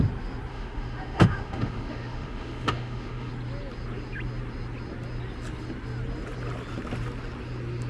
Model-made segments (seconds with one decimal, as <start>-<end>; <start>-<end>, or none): 0.5-3.3